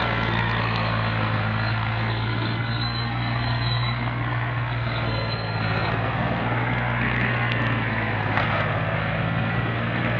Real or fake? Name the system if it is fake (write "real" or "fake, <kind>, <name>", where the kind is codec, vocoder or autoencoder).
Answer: fake, codec, SNAC